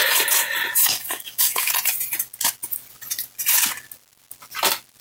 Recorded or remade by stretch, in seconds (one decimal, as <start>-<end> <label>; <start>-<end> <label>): 0.0-0.8 recorded; 0.8-1.7 remade; 1.7-5.0 recorded